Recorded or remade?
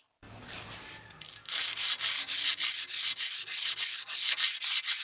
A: recorded